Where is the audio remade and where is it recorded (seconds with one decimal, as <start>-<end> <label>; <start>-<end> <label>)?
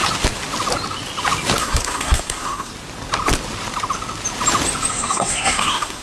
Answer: 0.0-1.6 recorded; 1.6-2.7 remade; 2.7-4.9 recorded; 4.9-6.0 remade